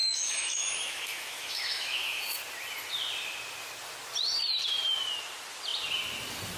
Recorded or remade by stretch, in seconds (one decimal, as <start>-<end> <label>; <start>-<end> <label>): 0.0-2.2 remade; 2.2-6.6 recorded